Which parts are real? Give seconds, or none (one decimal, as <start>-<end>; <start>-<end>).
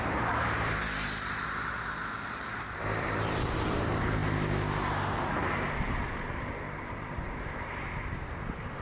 none